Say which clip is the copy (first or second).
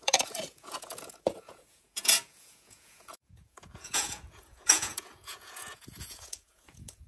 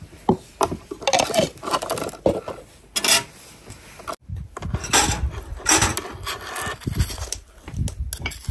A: first